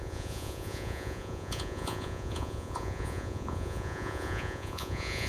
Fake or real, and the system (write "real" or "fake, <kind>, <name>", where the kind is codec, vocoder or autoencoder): fake, vocoder, Vocos